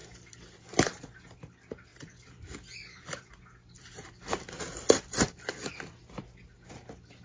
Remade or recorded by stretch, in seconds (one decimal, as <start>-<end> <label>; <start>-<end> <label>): 0.0-0.6 remade; 0.6-1.9 recorded; 1.9-5.3 remade; 5.3-7.2 recorded